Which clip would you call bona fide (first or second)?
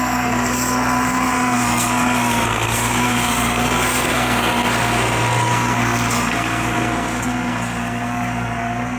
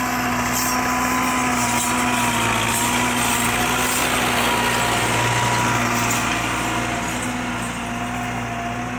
second